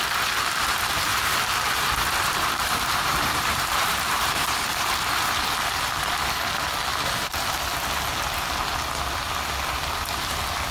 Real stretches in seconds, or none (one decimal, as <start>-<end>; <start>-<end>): 0.0-1.1; 5.4-10.7